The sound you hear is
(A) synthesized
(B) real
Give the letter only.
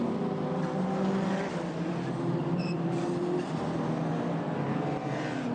B